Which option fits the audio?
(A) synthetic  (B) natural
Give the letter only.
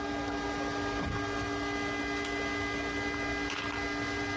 B